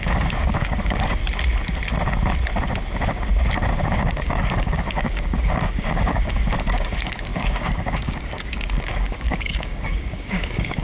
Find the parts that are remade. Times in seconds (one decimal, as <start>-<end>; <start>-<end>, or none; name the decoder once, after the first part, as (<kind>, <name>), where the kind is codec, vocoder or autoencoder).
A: 0.0-1.2 (codec, DAC); 3.7-10.8